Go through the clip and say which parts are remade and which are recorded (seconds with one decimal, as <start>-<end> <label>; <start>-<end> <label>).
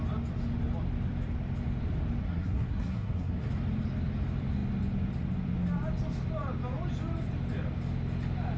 0.0-2.2 recorded; 2.2-3.5 remade; 3.5-8.6 recorded